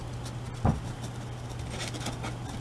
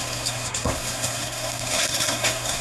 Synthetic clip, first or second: second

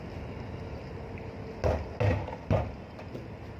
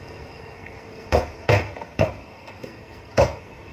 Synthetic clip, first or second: second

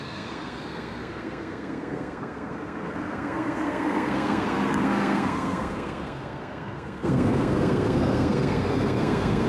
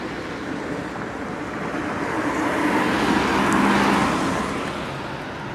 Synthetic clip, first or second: first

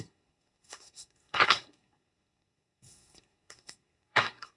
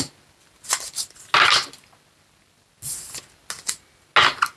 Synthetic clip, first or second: first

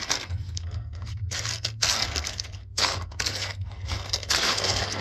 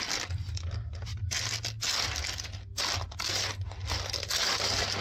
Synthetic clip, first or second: first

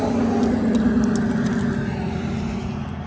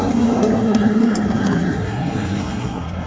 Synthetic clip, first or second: second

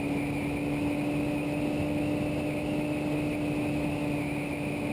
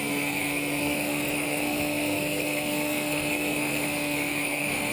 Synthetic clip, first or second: second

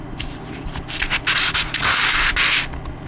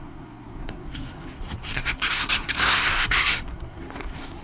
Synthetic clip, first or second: second